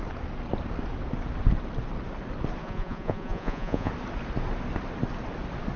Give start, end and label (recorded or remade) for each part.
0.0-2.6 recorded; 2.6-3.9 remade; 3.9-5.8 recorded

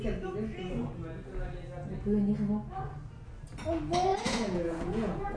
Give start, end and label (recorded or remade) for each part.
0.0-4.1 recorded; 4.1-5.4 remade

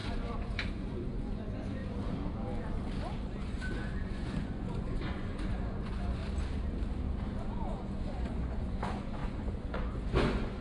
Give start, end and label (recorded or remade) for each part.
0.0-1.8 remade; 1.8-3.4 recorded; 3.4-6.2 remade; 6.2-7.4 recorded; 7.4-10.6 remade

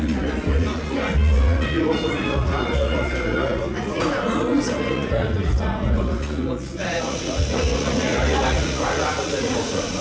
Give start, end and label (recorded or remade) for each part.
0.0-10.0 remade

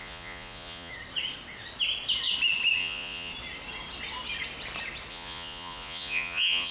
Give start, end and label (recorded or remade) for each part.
0.0-0.9 remade; 0.9-2.8 recorded; 2.8-3.3 remade; 3.3-5.1 recorded; 5.1-6.7 remade